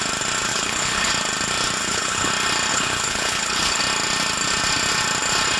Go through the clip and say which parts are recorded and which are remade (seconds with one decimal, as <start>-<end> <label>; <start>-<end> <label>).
0.0-0.5 recorded; 0.5-1.1 remade; 1.1-1.8 recorded; 1.8-2.3 remade; 2.3-2.7 recorded; 2.7-3.8 remade; 3.8-5.6 recorded